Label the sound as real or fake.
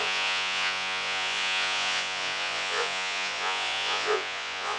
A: fake